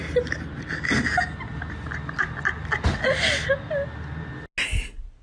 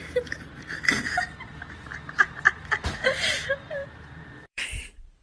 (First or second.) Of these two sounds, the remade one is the second